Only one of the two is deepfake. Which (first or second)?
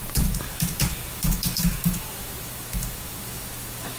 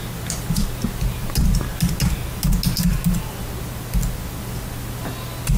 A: first